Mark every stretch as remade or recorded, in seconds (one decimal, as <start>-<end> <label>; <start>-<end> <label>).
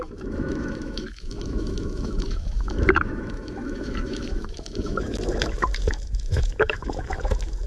0.0-7.7 remade